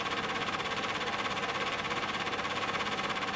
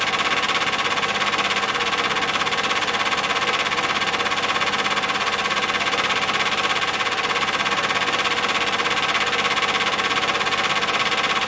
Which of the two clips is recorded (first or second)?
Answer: second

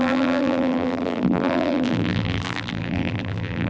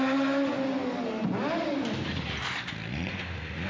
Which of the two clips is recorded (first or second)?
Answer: second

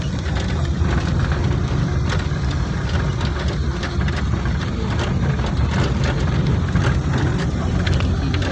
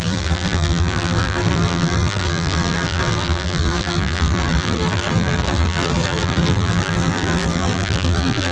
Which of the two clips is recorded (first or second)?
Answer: first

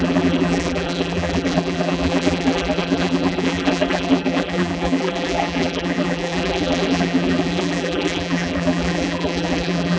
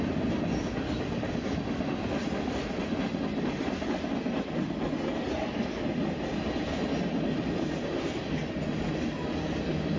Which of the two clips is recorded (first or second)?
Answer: second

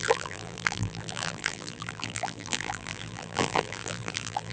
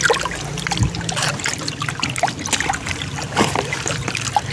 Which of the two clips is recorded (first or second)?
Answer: second